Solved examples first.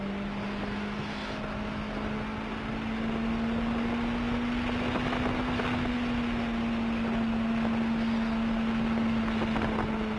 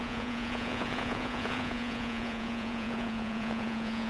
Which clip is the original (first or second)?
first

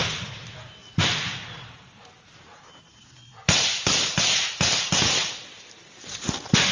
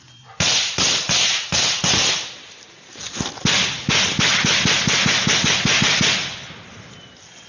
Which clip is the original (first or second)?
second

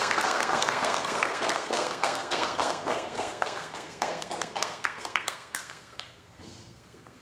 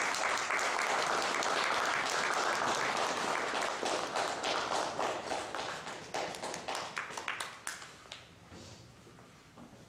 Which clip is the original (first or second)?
second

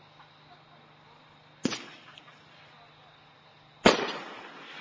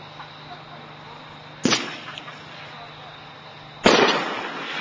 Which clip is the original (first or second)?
second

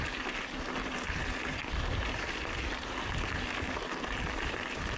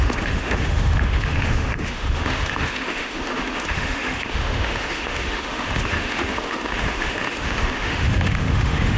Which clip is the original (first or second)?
first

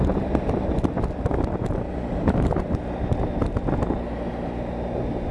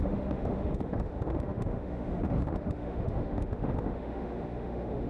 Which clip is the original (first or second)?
first